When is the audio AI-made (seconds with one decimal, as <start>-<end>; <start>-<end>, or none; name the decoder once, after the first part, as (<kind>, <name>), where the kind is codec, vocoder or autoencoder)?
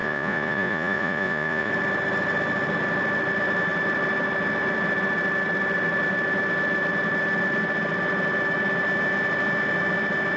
0.0-1.7 (vocoder, Vocos)